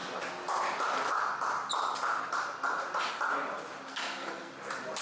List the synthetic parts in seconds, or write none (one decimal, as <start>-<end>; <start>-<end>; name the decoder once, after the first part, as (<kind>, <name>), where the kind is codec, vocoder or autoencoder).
3.9-4.5 (codec, SNAC)